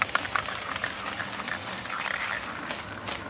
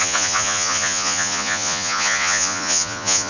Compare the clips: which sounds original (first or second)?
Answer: first